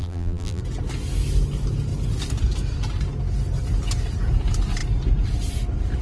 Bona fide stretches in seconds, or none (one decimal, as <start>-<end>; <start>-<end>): 0.6-6.0